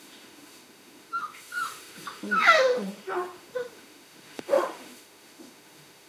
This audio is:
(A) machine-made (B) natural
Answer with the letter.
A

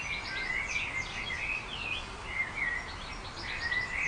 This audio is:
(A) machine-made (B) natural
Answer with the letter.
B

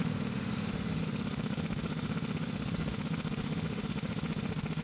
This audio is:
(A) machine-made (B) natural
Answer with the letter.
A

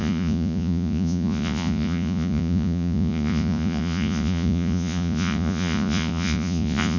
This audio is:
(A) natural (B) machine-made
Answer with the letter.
B